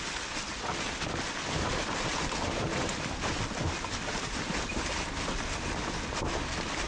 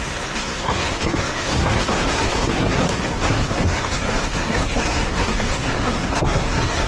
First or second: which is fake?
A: second